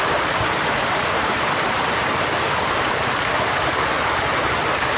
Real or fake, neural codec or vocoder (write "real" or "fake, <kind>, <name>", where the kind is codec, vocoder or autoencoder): real